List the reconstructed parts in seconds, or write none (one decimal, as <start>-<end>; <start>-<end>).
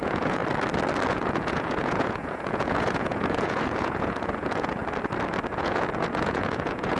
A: 0.0-0.4; 1.1-4.8; 5.5-7.0